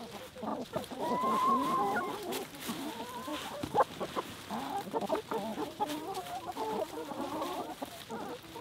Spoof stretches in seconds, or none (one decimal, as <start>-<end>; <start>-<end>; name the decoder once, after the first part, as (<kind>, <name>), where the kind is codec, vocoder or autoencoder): 0.5-2.9 (vocoder, BigVGAN v2); 5.5-7.7